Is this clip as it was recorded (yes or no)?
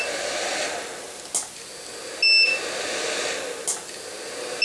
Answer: yes